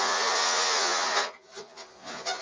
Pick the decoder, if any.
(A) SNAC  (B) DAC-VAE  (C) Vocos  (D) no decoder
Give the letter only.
C